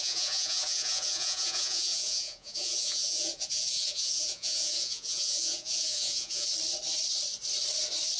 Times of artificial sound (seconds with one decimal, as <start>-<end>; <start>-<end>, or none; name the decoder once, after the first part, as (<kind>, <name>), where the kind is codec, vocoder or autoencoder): 0.0-6.5 (vocoder, Vocos)